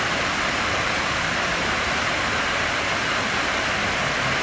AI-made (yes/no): no